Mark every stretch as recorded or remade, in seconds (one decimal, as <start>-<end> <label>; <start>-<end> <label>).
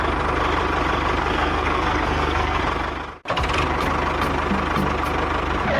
0.0-1.2 recorded; 1.2-2.6 remade; 2.6-5.8 recorded